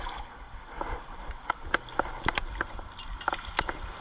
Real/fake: real